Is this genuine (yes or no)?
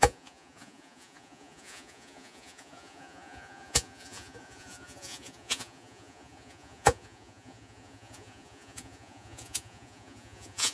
no